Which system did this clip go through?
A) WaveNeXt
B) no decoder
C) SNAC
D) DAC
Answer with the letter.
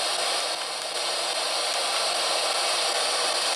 B